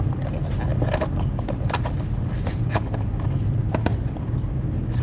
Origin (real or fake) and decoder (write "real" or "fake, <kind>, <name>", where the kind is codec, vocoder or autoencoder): real